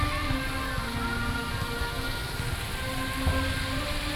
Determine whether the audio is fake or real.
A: real